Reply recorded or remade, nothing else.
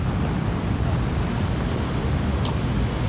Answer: recorded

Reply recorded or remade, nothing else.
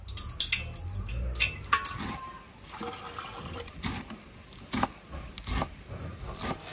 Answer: recorded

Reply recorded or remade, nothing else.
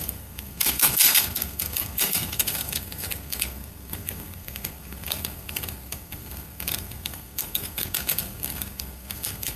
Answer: remade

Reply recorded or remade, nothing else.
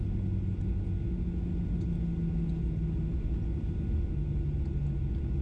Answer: recorded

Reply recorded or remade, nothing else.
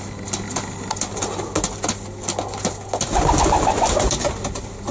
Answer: recorded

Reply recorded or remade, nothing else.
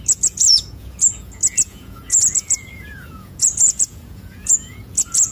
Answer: remade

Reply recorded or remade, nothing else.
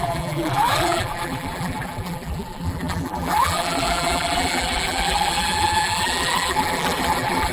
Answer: remade